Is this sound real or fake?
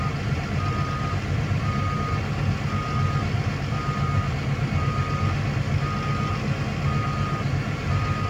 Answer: real